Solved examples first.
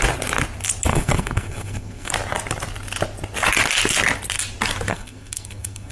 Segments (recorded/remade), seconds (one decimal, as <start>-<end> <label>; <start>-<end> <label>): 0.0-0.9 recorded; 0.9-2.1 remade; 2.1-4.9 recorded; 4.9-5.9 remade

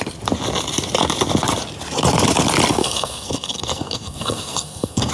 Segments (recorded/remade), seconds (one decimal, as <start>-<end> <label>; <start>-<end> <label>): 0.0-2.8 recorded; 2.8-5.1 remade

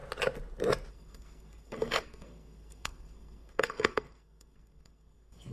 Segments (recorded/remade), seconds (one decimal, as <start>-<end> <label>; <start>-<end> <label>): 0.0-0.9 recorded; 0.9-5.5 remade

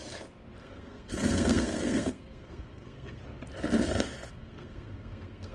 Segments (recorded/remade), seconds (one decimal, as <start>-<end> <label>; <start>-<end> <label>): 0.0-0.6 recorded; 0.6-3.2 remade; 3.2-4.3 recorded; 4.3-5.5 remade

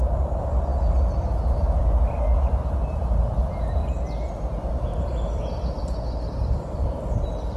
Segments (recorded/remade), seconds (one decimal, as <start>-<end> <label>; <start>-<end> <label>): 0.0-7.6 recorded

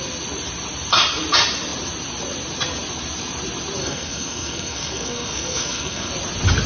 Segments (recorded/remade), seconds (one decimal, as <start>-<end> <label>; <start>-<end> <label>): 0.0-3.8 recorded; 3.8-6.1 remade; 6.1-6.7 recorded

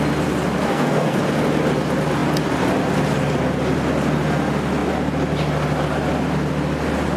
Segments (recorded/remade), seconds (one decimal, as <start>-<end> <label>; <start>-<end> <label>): 0.0-0.7 recorded; 0.7-1.2 remade; 1.2-7.2 recorded